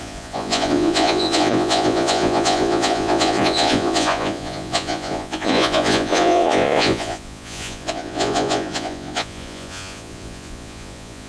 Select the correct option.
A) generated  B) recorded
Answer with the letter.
A